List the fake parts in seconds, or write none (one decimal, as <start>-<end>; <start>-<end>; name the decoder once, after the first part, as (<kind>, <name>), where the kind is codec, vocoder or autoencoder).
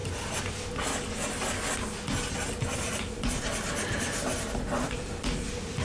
none